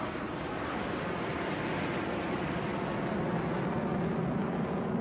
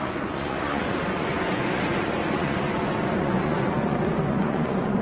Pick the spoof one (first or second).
second